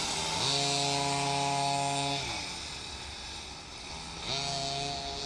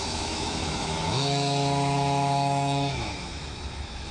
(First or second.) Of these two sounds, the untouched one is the first